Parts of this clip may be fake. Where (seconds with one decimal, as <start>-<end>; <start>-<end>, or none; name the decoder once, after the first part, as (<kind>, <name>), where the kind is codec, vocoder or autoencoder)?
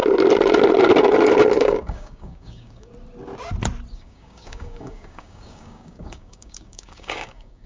1.6-2.9 (codec, DAC); 3.9-7.7